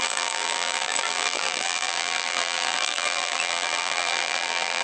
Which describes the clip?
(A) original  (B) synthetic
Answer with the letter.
B